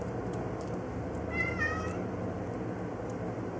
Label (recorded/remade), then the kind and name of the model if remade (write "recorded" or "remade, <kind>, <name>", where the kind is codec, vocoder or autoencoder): recorded